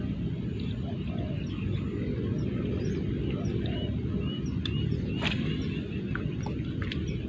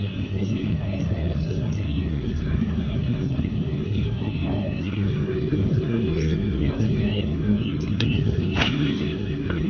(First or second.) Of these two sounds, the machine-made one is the second